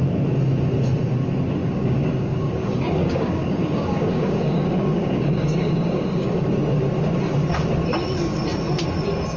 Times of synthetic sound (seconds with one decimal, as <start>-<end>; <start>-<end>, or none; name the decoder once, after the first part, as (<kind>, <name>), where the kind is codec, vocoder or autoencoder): 1.6-6.5 (codec, DAC)